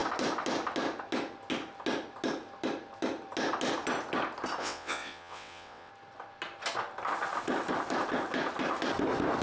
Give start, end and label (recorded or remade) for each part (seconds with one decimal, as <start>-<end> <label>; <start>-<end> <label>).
0.0-4.6 recorded; 4.6-5.9 remade; 5.9-9.4 recorded